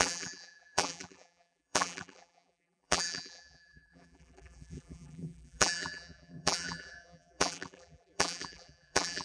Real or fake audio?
fake